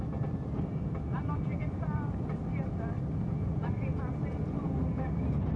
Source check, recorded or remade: recorded